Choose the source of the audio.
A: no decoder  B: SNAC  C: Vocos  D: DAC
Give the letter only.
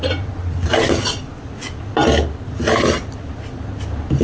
A